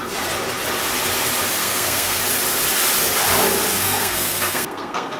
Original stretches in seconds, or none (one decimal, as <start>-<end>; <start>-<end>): 0.0-1.6; 2.2-3.7